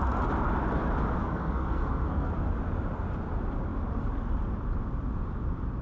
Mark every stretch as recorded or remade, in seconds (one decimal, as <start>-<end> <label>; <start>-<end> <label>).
0.0-1.2 recorded; 1.2-2.3 remade; 2.3-5.8 recorded